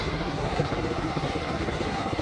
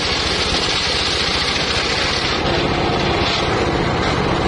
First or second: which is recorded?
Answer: second